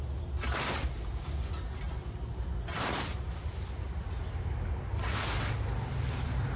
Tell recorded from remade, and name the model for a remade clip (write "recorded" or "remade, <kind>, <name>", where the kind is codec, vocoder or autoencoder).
recorded